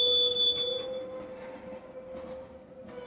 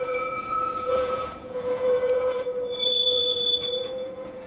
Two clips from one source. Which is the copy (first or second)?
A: second